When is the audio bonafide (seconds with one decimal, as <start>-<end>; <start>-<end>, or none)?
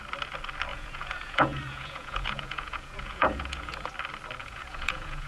0.0-0.7; 3.9-4.4